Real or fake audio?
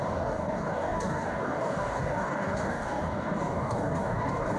fake